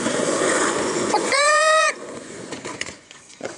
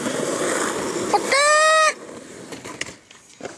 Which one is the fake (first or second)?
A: first